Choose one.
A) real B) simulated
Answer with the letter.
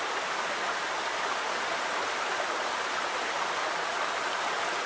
A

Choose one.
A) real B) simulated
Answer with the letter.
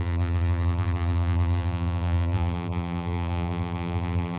B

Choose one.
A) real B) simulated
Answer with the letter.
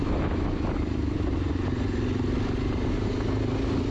A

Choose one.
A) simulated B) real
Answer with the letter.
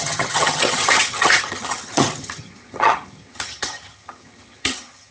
A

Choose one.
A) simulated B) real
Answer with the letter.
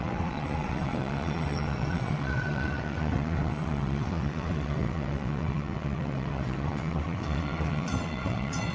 A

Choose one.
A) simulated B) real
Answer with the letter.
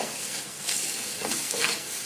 A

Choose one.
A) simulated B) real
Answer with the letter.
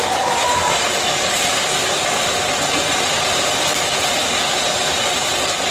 A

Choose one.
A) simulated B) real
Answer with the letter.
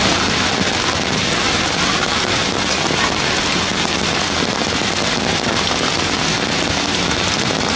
B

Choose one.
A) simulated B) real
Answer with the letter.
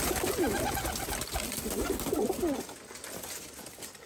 B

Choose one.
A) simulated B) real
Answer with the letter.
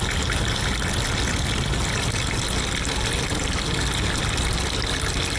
B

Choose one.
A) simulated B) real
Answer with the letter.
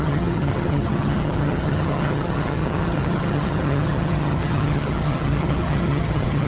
A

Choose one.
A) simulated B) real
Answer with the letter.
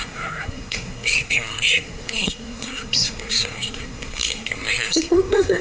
A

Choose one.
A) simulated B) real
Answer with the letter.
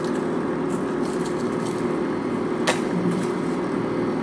B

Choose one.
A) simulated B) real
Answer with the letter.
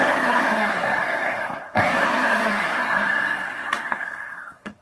A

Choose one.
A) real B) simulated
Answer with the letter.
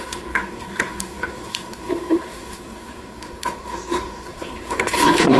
B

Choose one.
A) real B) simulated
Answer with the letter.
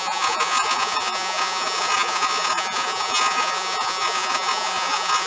B